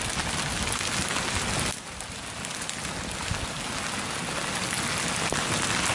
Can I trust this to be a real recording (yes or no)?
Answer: yes